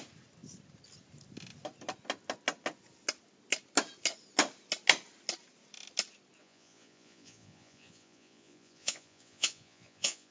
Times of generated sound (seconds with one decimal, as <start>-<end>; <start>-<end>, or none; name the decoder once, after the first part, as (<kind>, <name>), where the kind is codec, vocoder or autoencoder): 6.4-10.3 (vocoder, Vocos)